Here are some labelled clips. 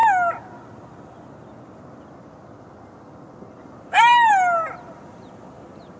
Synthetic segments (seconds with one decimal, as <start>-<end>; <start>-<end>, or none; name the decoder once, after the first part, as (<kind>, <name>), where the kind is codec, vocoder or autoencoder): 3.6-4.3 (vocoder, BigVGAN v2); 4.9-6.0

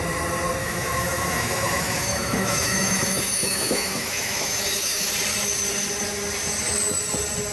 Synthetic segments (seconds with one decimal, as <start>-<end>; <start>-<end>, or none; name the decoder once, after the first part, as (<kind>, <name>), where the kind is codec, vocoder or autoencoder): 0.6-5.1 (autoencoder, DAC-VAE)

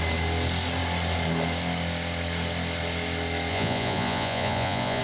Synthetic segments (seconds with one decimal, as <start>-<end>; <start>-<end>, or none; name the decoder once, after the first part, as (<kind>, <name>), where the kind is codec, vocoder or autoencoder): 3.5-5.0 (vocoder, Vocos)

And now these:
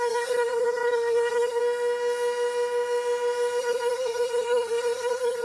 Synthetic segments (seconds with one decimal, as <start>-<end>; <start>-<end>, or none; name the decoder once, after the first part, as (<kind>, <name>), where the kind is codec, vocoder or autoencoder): 0.0-1.6 (codec, SNAC); 3.6-5.4

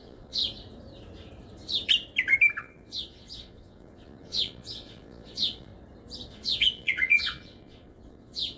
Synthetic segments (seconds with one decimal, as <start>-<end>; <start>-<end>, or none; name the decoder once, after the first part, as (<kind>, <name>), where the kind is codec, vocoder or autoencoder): 0.0-0.4 (vocoder, Vocos); 2.6-5.7; 6.3-8.6

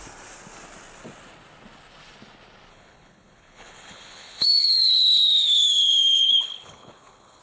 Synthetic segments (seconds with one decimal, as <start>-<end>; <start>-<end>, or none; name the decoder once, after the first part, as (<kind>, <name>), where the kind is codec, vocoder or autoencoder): 2.7-7.4 (codec, HILCodec)

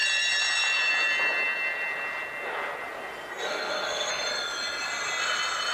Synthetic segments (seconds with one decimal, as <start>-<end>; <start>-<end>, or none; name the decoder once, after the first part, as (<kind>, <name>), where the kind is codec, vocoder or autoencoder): 3.3-4.1 (codec, SNAC)

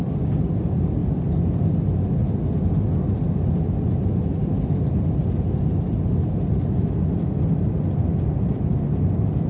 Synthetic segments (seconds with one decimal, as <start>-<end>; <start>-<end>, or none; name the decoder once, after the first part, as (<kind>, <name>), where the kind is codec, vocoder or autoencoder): none